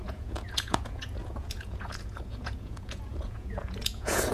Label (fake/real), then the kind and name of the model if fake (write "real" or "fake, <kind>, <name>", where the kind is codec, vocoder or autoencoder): fake, vocoder, Vocos